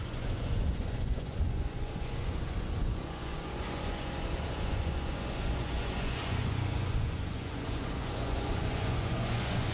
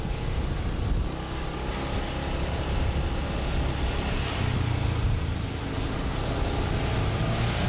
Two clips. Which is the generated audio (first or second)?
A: first